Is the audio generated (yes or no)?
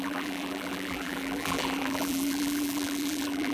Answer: yes